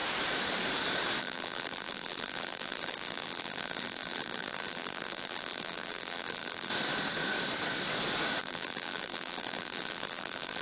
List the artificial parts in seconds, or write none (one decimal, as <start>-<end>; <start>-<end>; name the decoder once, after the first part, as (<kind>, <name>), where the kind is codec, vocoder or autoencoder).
1.2-6.7 (vocoder, BigVGAN v2); 8.4-10.6